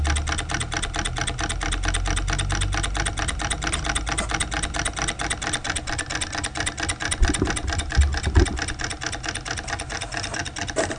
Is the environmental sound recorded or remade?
recorded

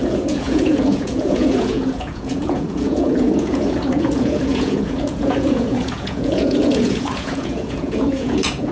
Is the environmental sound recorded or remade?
remade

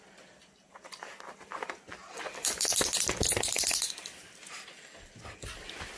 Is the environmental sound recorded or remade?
recorded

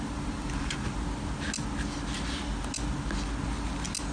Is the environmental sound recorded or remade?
recorded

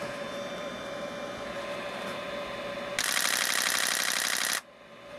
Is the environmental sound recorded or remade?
recorded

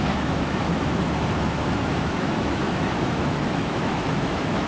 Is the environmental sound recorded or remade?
remade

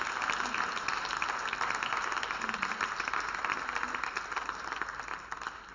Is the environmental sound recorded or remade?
recorded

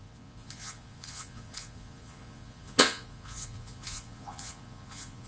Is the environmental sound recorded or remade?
remade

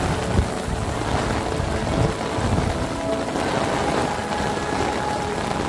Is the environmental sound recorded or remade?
recorded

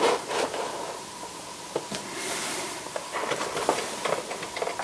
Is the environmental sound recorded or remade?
recorded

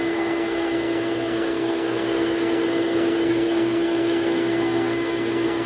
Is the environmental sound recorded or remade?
remade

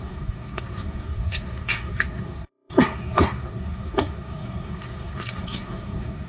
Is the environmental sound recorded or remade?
remade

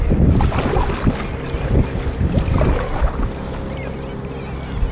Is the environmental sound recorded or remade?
recorded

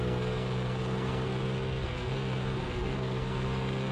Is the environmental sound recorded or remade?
remade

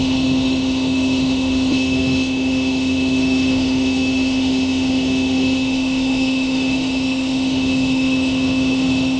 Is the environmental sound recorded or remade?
remade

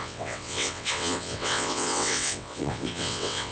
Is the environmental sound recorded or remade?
remade